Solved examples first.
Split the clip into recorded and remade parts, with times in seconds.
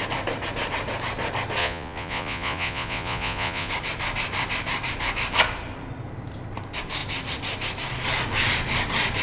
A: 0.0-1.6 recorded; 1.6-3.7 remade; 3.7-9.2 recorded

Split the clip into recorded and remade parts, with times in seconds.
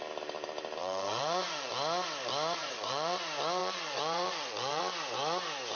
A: 0.0-0.8 recorded; 0.8-1.7 remade; 1.7-2.6 recorded; 2.6-3.2 remade; 3.2-3.6 recorded; 3.6-4.8 remade; 4.8-5.8 recorded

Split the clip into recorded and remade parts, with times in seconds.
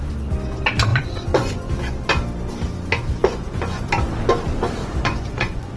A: 0.0-0.9 recorded; 0.9-1.7 remade; 1.7-3.2 recorded; 3.2-3.9 remade; 3.9-4.8 recorded; 4.8-5.8 remade